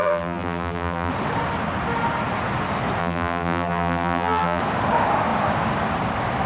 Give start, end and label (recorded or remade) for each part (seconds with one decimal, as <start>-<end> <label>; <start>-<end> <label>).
0.0-1.1 remade; 1.1-3.0 recorded; 3.0-4.6 remade; 4.6-6.5 recorded

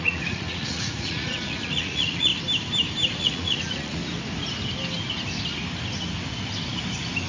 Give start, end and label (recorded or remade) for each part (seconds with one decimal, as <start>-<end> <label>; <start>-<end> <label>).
0.0-2.3 remade; 2.3-3.2 recorded; 3.2-4.0 remade; 4.0-7.3 recorded